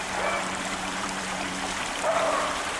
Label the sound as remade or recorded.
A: remade